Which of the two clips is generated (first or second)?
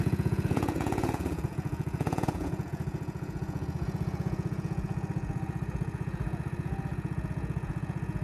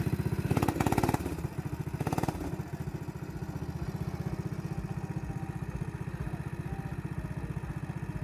first